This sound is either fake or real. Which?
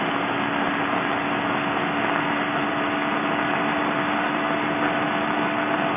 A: real